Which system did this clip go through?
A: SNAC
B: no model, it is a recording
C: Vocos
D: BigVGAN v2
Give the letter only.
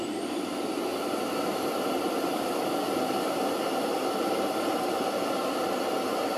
D